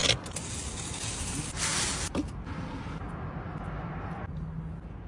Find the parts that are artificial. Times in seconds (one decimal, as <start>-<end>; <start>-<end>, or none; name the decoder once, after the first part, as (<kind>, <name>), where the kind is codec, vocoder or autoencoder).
none